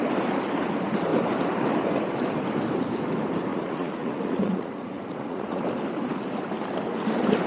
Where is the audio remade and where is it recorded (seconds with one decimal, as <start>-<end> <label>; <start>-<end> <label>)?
0.0-3.5 recorded; 3.5-5.6 remade; 5.6-7.5 recorded